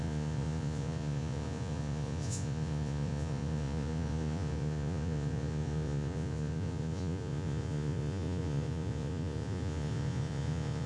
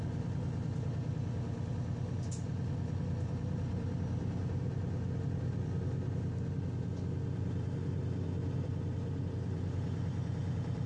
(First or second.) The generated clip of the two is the first